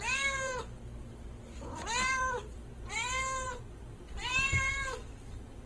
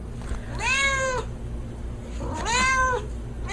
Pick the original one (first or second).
second